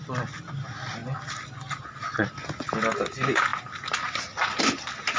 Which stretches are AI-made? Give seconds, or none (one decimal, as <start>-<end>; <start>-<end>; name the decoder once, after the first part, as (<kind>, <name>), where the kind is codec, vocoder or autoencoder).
none